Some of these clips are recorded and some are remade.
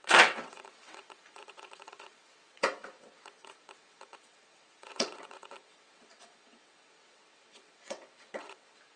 remade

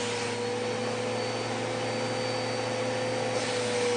recorded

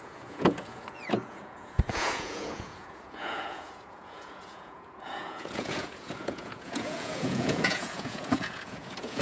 remade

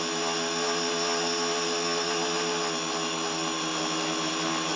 recorded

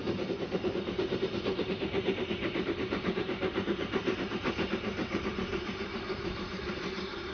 remade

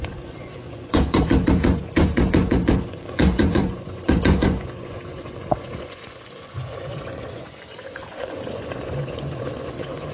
remade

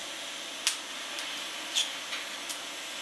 recorded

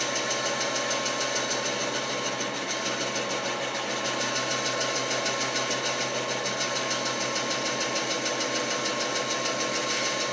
recorded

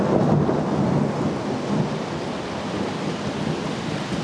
recorded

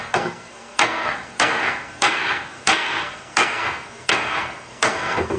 remade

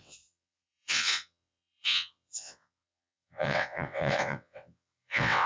remade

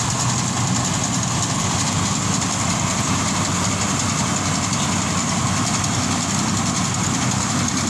recorded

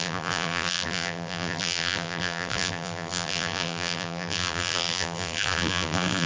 remade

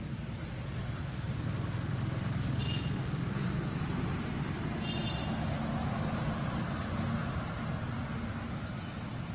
recorded